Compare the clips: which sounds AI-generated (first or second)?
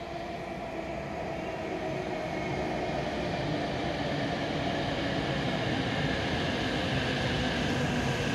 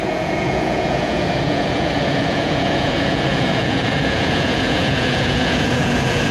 second